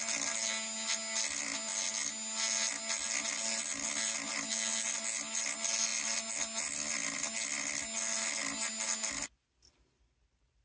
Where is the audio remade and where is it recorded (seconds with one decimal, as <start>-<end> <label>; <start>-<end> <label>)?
0.0-10.6 recorded